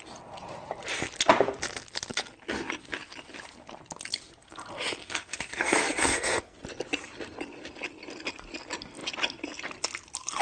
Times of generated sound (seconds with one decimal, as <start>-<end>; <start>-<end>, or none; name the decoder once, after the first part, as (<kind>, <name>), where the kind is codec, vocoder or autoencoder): 5.0-6.6 (codec, SNAC)